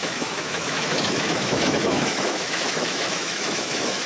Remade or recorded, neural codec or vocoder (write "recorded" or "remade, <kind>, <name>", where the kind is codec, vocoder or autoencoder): remade, autoencoder, DAC-VAE